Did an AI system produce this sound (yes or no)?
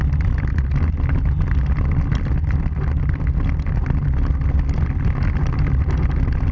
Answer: no